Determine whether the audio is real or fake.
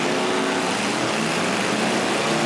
real